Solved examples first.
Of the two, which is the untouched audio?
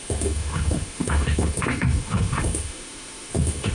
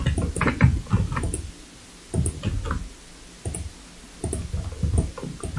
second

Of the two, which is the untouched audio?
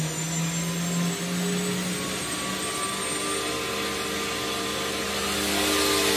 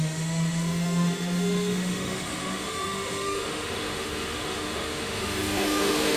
first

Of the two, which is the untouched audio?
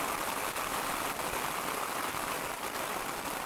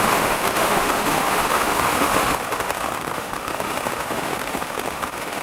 first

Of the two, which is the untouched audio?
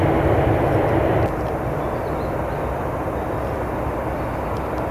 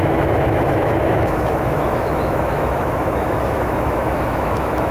first